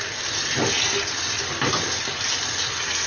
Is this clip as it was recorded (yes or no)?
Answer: yes